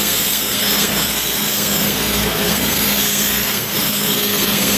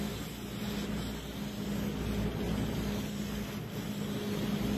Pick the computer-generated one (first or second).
first